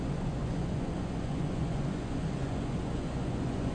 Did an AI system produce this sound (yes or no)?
yes